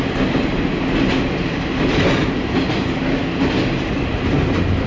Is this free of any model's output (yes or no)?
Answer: yes